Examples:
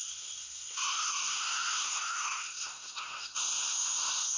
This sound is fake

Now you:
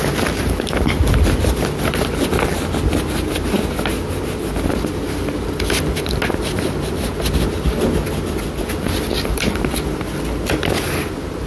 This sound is real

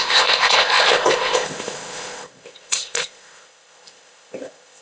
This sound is fake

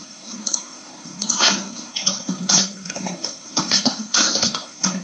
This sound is fake